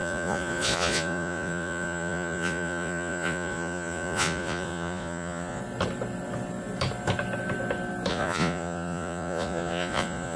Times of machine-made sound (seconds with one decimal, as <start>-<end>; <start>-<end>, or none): 0.0-5.6; 8.1-10.4